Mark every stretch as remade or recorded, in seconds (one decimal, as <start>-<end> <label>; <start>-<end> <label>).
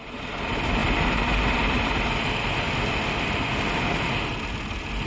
0.0-5.1 recorded